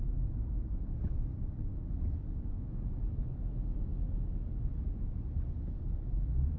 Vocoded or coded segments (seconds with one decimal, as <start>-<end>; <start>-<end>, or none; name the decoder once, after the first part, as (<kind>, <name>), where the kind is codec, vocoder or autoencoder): none